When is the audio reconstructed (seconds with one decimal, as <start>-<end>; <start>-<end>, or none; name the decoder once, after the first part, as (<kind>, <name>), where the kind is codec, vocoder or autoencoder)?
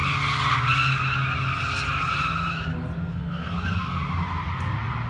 3.0-4.0 (codec, SNAC)